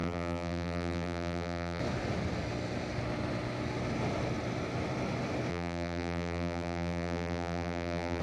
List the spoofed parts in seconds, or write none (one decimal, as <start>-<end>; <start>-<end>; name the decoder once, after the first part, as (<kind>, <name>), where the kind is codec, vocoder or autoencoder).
0.0-1.8 (vocoder, BigVGAN v2); 5.5-8.2